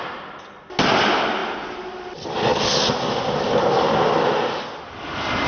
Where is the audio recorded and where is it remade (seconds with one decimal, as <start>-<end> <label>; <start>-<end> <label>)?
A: 0.0-5.5 recorded